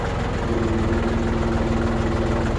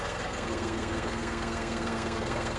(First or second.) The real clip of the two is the first